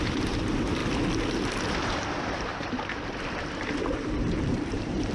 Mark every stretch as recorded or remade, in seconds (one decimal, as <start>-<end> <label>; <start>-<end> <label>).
0.0-0.8 remade; 0.8-1.7 recorded; 1.7-5.1 remade